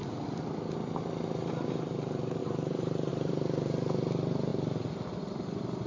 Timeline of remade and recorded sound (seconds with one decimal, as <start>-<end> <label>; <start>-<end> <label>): 0.0-2.4 recorded; 2.4-3.1 remade; 3.1-5.9 recorded